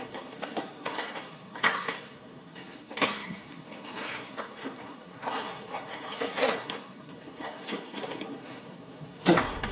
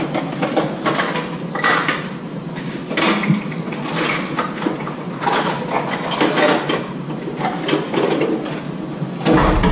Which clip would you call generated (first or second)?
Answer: first